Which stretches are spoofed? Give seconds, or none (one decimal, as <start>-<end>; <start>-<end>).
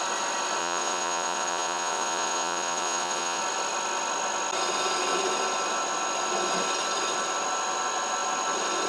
0.6-3.4